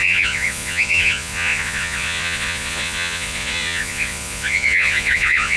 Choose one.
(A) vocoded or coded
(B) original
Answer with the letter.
A